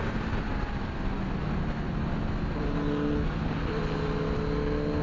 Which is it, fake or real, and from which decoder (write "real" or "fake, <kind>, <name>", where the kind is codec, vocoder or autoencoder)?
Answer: real